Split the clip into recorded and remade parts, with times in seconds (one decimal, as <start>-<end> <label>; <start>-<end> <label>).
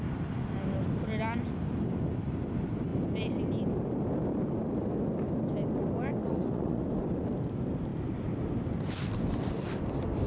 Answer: 0.0-6.2 recorded; 6.2-6.8 remade; 6.8-10.3 recorded